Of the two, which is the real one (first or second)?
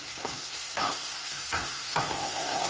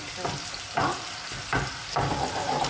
second